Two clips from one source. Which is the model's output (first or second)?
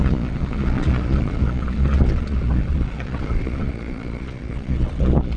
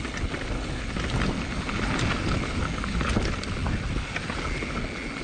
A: first